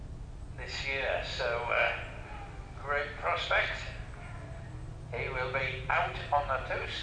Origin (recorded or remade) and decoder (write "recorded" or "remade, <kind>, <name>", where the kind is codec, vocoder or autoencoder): recorded